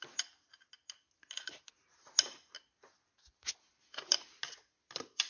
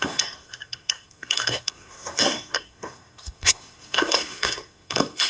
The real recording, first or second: first